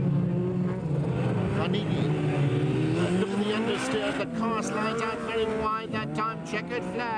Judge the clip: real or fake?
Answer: real